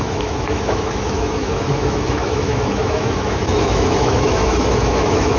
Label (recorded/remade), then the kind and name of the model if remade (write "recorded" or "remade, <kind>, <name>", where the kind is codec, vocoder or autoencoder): remade, autoencoder, DAC-VAE